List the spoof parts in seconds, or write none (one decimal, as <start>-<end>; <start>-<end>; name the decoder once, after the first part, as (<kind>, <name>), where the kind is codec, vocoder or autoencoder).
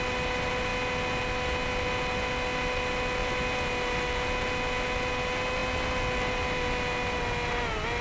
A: none